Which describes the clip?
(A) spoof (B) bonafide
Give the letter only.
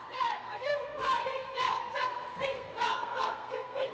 A